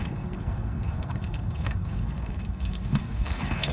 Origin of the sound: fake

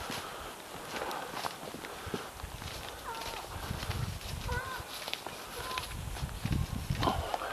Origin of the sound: real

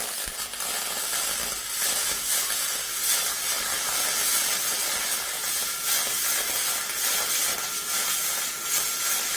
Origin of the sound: real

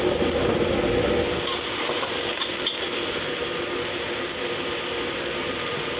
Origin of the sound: real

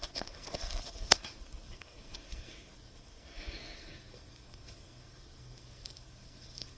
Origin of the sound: fake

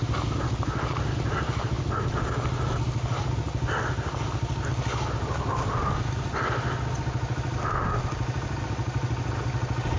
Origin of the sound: real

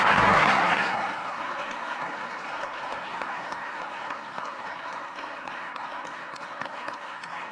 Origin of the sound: fake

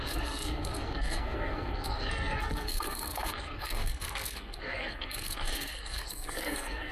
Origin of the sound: fake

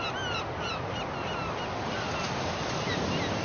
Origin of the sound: real